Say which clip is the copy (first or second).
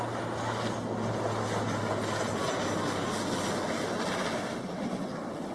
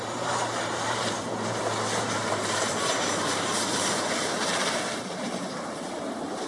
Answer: second